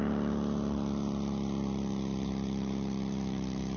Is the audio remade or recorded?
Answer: remade